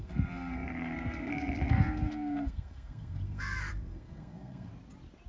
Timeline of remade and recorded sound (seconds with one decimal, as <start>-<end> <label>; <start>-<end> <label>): 0.0-4.7 remade; 4.7-5.3 recorded